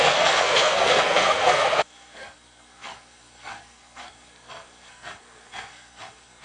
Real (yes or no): no